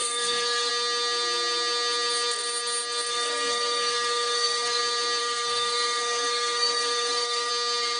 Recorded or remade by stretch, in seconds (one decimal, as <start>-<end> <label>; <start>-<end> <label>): 0.0-0.7 remade; 0.7-3.1 recorded; 3.1-4.8 remade; 4.8-5.2 recorded; 5.2-7.5 remade; 7.5-8.0 recorded

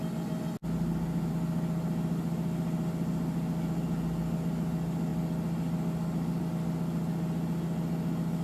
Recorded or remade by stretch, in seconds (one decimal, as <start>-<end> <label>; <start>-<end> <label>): 0.0-8.4 recorded

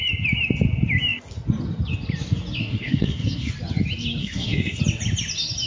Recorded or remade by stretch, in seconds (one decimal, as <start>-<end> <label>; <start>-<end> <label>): 0.0-2.6 recorded; 2.6-3.5 remade; 3.5-4.2 recorded; 4.2-4.8 remade; 4.8-5.7 recorded

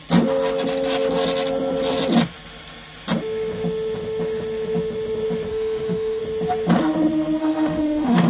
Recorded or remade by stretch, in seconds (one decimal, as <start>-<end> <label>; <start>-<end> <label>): 0.0-5.5 recorded; 5.5-6.2 remade; 6.2-7.4 recorded; 7.4-8.3 remade

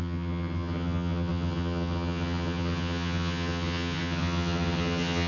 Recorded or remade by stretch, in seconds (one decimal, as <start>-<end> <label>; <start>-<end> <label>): 0.0-5.3 remade

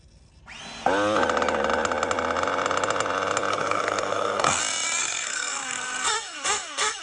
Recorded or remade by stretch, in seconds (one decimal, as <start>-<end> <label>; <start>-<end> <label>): 0.0-3.5 recorded; 3.5-4.6 remade; 4.6-5.0 recorded; 5.0-7.0 remade